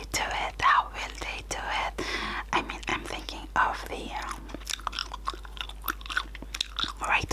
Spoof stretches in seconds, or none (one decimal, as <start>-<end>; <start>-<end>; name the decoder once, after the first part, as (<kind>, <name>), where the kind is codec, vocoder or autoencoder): none